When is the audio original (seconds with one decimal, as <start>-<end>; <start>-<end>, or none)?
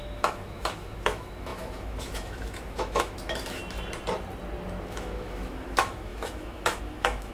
3.6-4.9